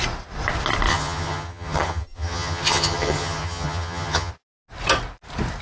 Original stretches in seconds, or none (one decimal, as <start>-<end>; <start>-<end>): 0.0-0.9; 4.3-5.6